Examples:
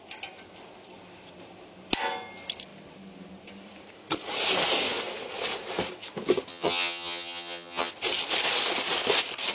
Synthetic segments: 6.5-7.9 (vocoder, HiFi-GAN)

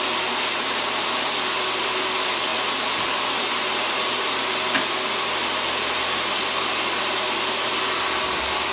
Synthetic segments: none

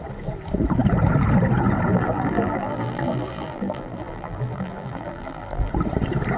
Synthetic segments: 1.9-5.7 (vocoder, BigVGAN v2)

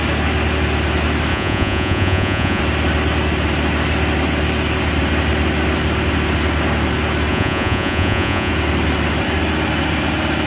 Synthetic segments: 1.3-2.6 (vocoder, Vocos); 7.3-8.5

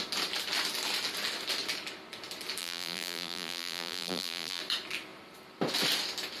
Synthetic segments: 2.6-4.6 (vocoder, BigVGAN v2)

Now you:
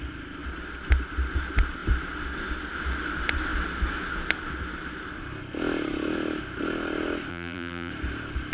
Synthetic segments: 7.3-7.9 (vocoder, BigVGAN v2)